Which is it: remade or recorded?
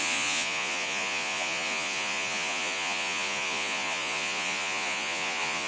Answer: remade